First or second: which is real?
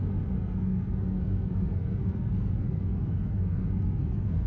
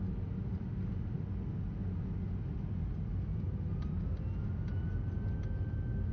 second